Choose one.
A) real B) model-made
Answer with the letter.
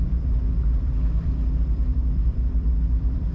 B